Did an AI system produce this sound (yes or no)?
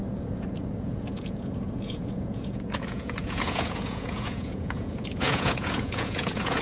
yes